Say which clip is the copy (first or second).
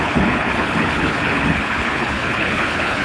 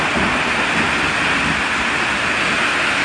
first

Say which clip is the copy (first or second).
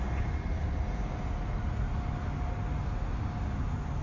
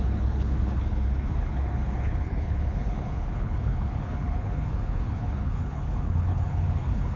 second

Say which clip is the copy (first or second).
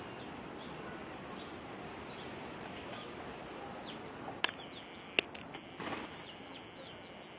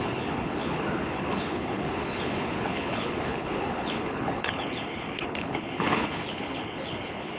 second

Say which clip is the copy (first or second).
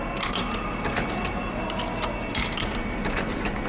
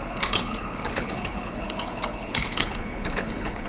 second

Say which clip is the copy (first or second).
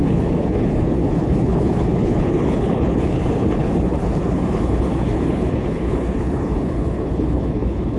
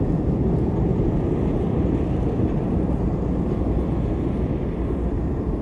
first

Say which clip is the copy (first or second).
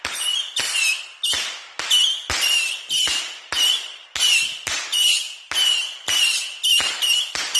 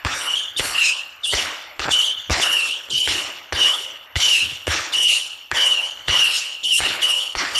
second